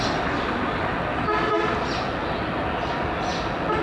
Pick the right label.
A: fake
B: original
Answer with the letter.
B